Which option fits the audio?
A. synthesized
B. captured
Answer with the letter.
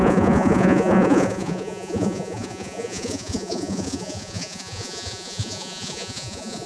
A